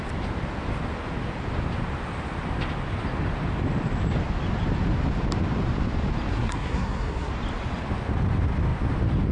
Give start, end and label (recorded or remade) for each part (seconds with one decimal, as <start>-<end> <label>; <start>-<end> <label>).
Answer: 0.0-6.3 recorded; 6.3-7.3 remade; 7.3-9.3 recorded